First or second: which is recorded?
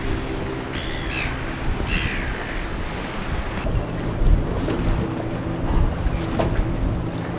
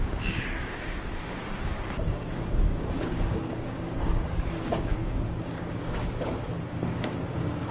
first